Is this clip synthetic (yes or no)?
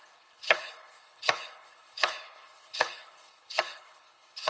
yes